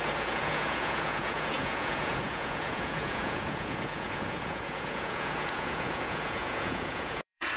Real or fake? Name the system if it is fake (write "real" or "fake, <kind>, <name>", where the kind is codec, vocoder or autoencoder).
fake, vocoder, Vocos